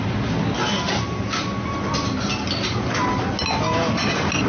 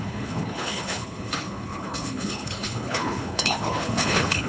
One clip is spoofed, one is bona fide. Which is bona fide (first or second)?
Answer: first